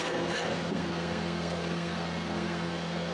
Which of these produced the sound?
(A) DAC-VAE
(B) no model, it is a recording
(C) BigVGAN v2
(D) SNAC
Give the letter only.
D